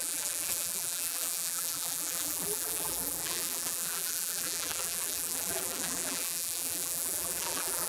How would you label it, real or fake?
fake